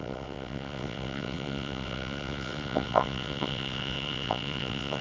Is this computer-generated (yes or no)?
yes